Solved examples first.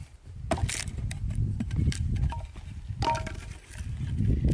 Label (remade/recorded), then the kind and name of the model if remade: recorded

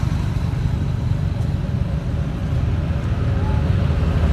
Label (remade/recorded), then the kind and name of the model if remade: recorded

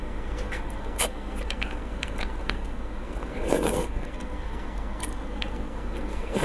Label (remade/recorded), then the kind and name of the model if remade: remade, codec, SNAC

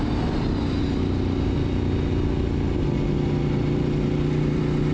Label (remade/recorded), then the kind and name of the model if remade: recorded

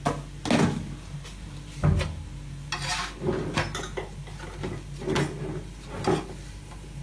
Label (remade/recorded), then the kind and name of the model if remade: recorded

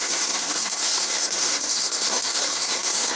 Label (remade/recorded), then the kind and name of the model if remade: remade, codec, SNAC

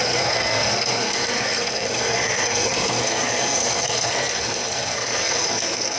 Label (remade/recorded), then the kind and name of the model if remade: remade, codec, SNAC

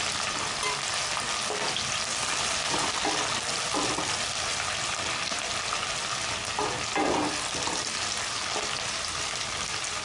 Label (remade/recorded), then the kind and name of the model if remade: recorded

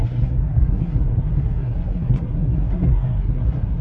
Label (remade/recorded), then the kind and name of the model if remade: remade, codec, SNAC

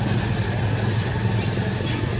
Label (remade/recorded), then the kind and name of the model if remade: recorded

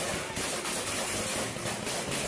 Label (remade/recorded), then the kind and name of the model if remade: recorded